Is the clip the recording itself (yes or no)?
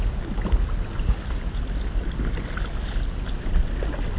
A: yes